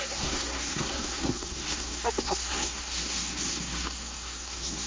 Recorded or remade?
remade